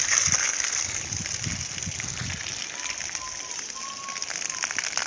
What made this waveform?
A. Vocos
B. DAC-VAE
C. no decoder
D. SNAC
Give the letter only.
C